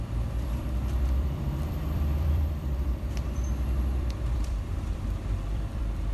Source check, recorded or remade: remade